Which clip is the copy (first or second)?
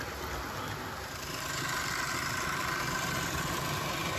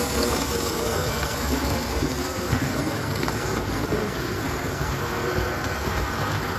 second